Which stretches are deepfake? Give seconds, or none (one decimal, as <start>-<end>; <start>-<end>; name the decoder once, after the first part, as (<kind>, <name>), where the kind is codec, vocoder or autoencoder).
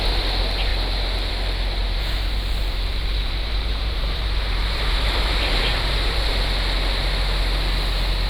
1.8-6.3 (vocoder, BigVGAN v2)